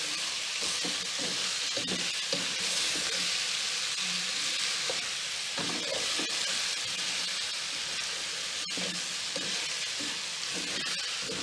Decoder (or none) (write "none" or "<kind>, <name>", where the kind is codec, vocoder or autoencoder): none